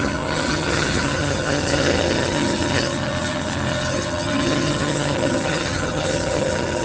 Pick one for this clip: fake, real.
fake